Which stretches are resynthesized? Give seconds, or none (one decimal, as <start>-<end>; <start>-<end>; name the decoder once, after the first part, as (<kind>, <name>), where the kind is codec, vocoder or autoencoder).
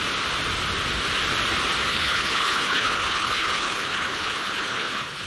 1.9-5.3 (codec, HILCodec)